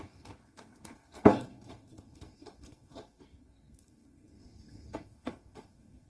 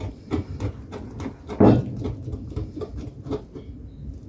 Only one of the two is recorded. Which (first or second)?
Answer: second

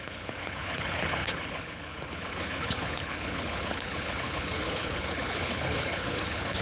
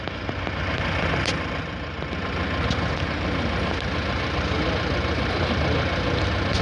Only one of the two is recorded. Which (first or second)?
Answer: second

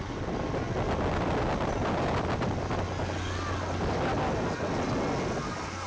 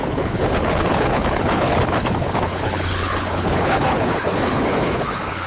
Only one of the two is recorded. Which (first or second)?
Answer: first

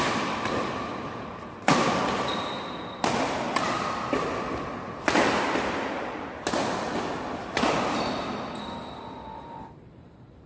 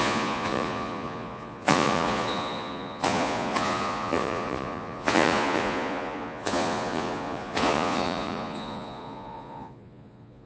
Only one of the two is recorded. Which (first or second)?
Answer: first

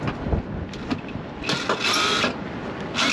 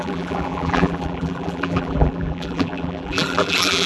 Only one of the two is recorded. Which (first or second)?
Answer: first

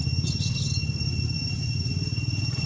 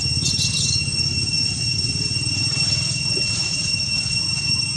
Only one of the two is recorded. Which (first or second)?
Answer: first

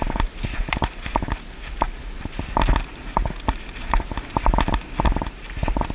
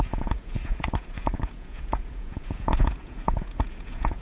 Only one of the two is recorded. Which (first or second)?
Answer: first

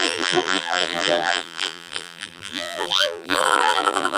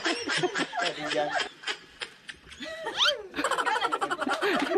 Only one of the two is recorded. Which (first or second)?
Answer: second